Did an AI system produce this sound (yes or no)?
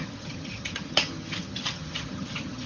yes